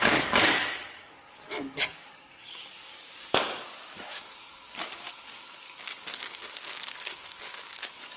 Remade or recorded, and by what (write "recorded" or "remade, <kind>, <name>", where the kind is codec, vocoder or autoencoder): remade, codec, DAC